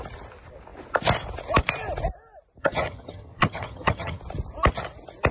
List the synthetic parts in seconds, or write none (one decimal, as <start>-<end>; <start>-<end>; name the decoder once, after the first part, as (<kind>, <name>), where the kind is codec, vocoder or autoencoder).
2.6-4.2 (vocoder, HiFi-GAN)